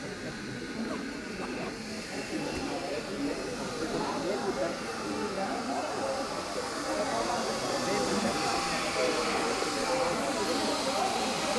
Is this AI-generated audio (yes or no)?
no